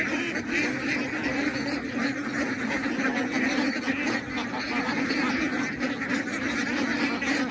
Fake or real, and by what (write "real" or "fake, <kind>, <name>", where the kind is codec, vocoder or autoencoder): real